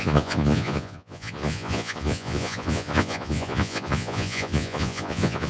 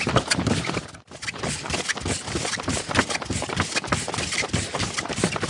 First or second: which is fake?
first